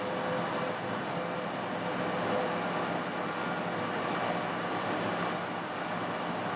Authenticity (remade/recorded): recorded